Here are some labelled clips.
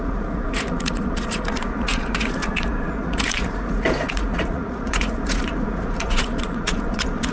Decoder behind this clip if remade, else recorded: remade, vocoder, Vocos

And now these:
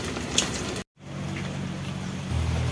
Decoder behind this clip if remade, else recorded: recorded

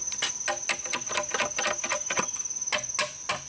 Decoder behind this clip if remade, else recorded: recorded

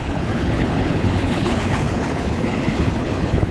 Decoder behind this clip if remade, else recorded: remade, codec, HILCodec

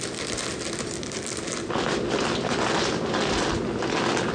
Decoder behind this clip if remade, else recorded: recorded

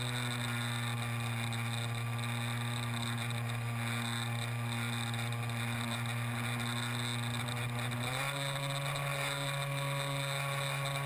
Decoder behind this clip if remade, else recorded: recorded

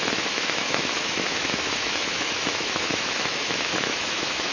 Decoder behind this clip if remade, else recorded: remade, autoencoder, DAC-VAE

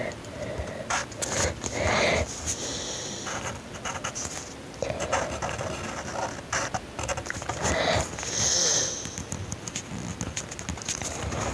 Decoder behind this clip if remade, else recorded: recorded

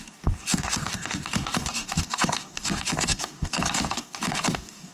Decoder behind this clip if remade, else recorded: remade, codec, DAC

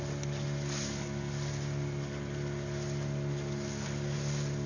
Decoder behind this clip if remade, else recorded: recorded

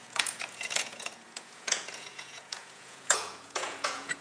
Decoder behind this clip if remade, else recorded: remade, vocoder, Vocos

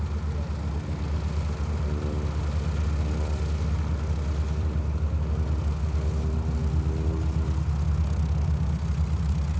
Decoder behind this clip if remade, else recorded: recorded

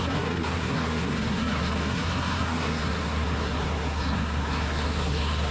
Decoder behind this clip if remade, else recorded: remade, codec, SNAC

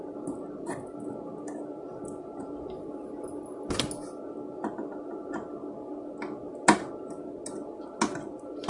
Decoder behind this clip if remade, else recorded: recorded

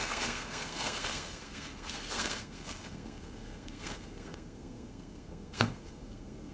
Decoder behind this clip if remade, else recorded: remade, codec, SNAC